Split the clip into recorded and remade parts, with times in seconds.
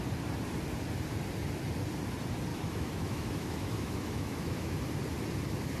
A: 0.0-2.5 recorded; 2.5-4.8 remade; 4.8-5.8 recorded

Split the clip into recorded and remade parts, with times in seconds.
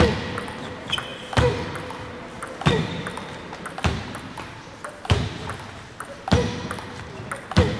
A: 0.0-1.1 recorded; 1.1-5.8 remade; 5.8-7.8 recorded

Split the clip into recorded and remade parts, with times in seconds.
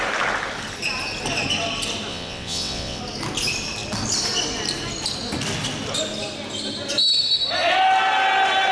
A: 0.0-2.1 recorded; 2.1-3.0 remade; 3.0-8.7 recorded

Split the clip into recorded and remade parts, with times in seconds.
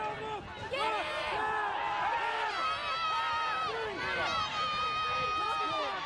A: 0.0-6.1 recorded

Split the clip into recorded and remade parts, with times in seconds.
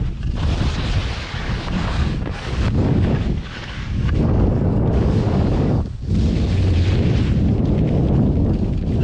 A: 0.0-1.4 recorded; 1.4-6.1 remade; 6.1-9.0 recorded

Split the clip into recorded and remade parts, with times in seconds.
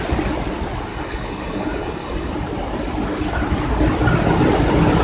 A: 0.0-0.9 recorded; 0.9-2.3 remade; 2.3-5.0 recorded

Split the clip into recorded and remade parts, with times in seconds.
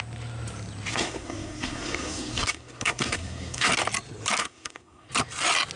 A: 0.0-0.9 recorded; 0.9-3.7 remade; 3.7-4.4 recorded; 4.4-5.1 remade; 5.1-5.8 recorded